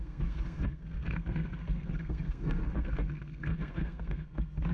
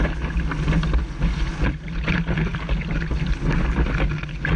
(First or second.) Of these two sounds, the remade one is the first